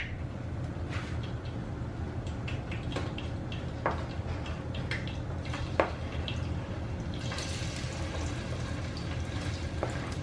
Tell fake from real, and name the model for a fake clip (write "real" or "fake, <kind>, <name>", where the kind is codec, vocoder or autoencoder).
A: real